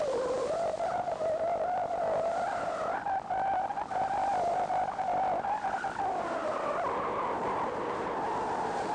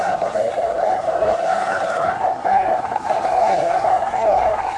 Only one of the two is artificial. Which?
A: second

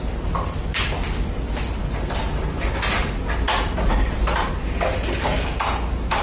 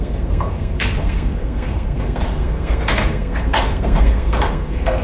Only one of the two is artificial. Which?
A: second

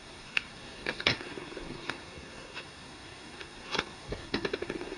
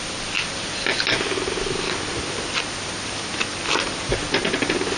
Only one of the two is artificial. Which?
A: first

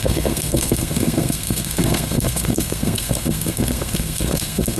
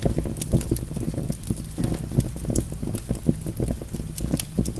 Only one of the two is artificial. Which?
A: first